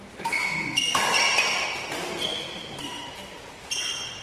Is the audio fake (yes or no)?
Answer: no